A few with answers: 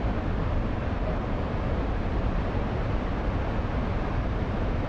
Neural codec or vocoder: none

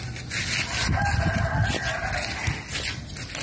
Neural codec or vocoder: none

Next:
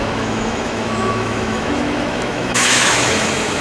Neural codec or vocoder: autoencoder, DAC-VAE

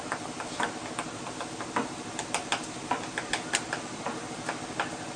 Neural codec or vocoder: none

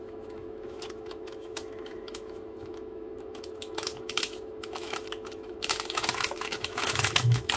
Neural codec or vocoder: autoencoder, DAC-VAE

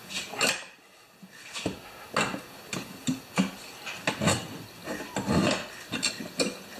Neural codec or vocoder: none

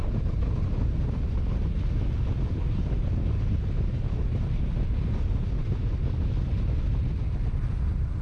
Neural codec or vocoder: none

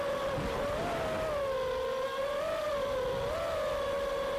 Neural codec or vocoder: none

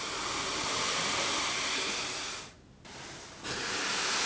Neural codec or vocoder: none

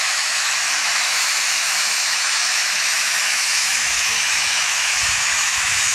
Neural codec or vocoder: autoencoder, DAC-VAE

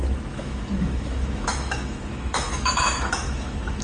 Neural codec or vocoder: autoencoder, DAC-VAE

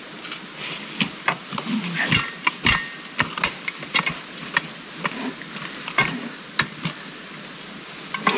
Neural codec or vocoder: none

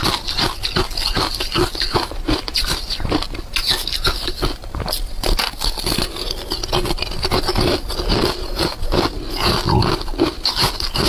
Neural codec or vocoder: none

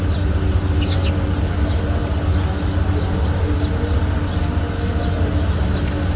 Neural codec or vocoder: none